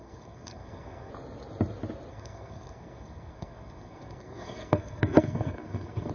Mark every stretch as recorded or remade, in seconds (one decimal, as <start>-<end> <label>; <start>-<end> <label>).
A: 0.0-1.1 remade; 1.1-2.1 recorded; 2.1-6.1 remade